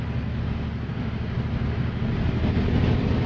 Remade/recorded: recorded